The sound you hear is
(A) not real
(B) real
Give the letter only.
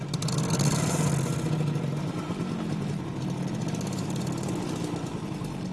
B